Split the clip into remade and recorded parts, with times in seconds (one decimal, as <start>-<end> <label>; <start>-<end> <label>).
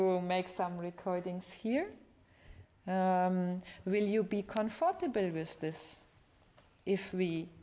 0.0-7.6 recorded